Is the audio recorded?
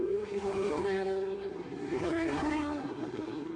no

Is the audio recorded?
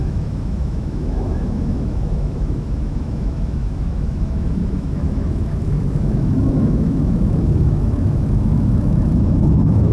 no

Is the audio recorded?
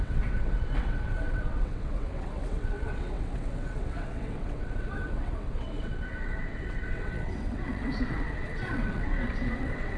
no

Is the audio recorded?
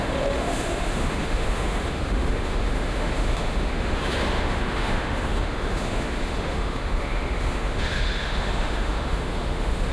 no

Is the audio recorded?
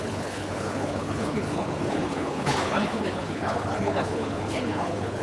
no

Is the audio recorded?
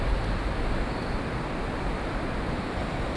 yes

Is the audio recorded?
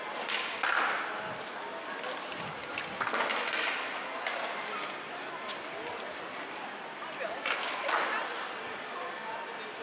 yes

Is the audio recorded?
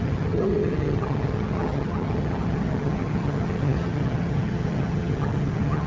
no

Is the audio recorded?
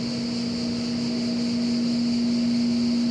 yes